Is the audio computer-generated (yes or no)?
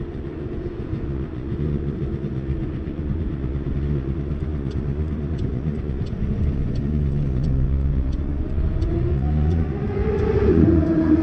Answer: yes